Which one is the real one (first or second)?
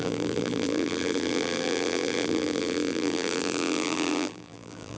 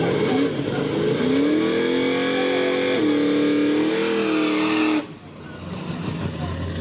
second